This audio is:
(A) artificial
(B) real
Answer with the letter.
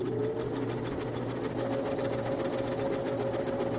B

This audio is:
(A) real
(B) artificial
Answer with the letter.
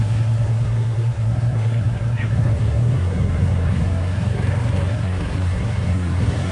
B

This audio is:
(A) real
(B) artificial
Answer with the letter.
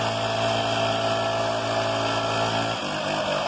A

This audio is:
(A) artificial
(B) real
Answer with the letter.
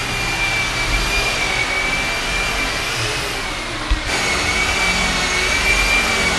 B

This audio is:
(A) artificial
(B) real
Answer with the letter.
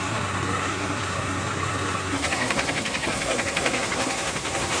A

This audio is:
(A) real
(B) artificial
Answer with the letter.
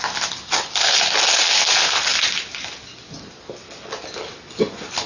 A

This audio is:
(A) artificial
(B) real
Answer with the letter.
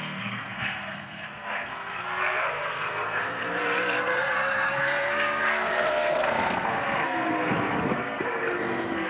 A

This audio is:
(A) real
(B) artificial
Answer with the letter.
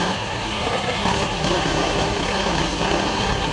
B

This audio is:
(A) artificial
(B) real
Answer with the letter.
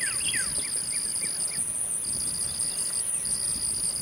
B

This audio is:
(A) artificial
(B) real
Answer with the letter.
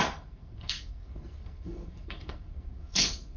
A